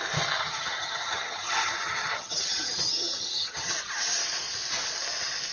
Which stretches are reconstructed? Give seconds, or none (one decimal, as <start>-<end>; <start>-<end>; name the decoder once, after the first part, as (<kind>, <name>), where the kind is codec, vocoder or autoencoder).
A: 0.4-3.7 (vocoder, HiFi-GAN)

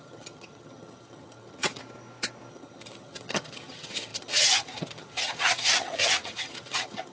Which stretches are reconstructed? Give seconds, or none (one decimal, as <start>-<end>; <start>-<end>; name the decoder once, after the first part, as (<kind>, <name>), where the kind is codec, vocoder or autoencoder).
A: 0.0-1.8 (vocoder, HiFi-GAN); 2.5-7.1

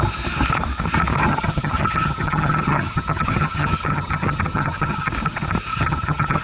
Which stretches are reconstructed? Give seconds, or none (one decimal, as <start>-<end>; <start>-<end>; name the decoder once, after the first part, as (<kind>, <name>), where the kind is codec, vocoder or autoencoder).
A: 1.3-5.1 (vocoder, HiFi-GAN); 5.7-6.4

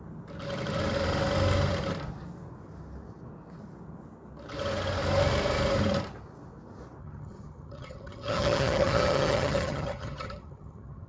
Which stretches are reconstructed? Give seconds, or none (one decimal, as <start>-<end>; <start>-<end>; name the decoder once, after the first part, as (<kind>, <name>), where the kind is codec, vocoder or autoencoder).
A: 7.0-11.1 (vocoder, HiFi-GAN)

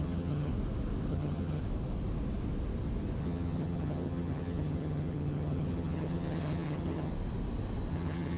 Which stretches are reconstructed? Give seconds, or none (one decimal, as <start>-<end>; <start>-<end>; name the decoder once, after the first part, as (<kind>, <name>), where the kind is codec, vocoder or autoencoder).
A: 0.0-0.5 (vocoder, HiFi-GAN); 1.1-1.6; 3.2-7.1; 7.9-8.4